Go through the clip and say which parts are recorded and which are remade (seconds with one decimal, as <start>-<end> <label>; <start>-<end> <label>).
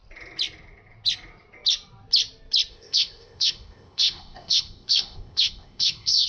0.0-2.7 recorded; 2.7-6.3 remade